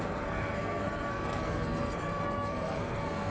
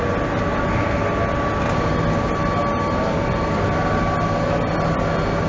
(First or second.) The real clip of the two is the second